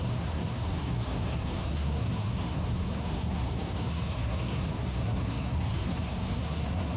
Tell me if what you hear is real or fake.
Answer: fake